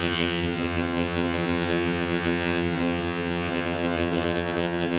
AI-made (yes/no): yes